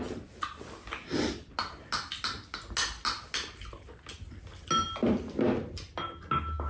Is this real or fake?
real